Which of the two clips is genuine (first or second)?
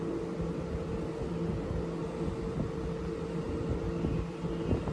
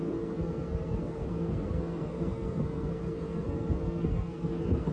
first